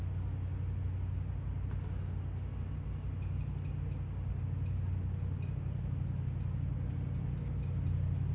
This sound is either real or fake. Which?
real